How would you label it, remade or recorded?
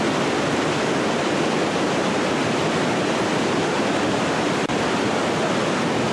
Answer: recorded